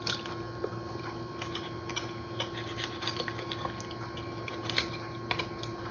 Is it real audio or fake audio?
real